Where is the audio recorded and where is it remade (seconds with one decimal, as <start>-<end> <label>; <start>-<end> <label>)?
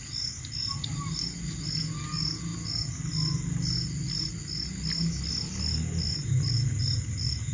0.0-6.2 recorded; 6.2-6.8 remade; 6.8-7.5 recorded